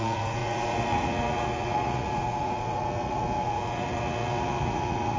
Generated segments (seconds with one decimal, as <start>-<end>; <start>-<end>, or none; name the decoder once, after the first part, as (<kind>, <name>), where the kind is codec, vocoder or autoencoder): 0.0-5.2 (vocoder, Vocos)